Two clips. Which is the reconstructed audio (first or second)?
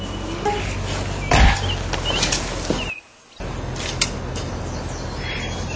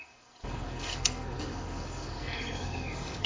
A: second